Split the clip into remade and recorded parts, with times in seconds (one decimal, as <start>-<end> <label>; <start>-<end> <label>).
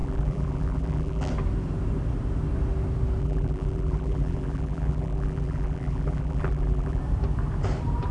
0.0-1.3 remade; 1.3-3.2 recorded; 3.2-7.0 remade; 7.0-8.1 recorded